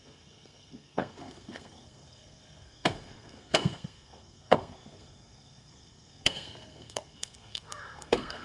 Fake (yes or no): yes